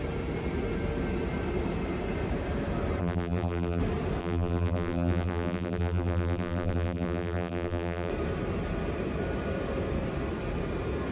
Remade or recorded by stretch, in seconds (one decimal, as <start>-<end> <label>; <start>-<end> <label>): 0.0-3.0 recorded; 3.0-3.8 remade; 3.8-4.2 recorded; 4.2-8.1 remade; 8.1-11.1 recorded